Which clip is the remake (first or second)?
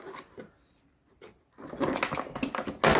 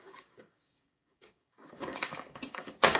second